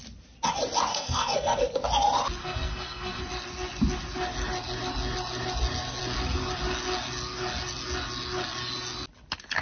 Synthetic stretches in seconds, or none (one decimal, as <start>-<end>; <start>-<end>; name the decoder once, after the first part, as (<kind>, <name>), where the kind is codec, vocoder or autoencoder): 0.9-1.6 (codec, SNAC); 2.4-3.2